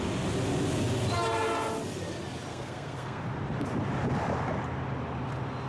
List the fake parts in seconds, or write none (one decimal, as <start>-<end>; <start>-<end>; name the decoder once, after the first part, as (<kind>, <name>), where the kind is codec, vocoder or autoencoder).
2.5-3.2 (codec, SNAC)